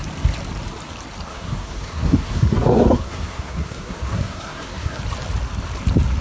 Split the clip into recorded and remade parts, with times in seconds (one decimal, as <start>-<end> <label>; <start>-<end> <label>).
0.0-1.3 recorded; 1.3-5.0 remade; 5.0-6.2 recorded